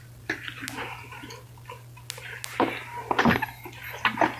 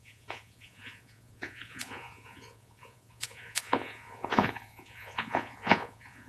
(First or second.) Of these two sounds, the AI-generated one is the second